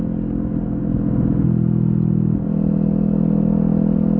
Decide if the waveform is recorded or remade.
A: recorded